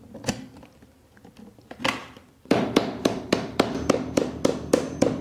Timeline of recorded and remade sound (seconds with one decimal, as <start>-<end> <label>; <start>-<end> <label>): 0.0-2.0 recorded; 2.0-5.2 remade